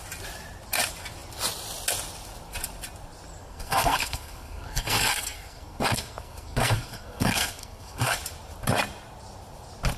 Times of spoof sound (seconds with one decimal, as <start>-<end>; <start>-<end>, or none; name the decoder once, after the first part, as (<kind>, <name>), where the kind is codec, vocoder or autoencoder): 3.4-8.2 (codec, SNAC)